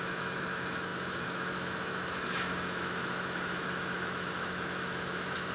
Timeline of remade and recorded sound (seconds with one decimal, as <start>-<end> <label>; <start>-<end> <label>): 0.0-5.5 remade